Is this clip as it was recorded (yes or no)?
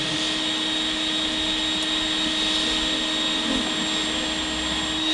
yes